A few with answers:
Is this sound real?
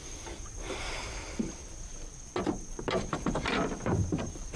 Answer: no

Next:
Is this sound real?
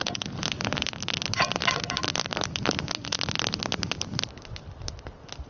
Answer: yes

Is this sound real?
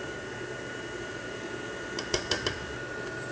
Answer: no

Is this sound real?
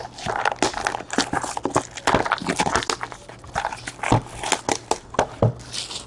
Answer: yes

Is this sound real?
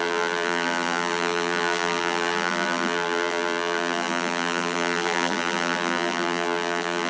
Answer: no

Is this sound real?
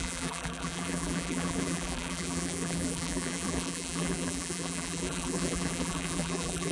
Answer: no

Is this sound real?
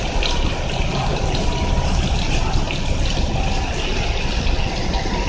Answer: yes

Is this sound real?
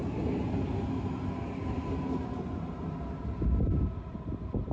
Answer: yes